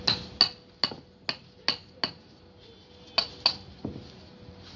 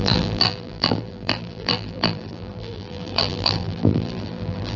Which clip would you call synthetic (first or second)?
second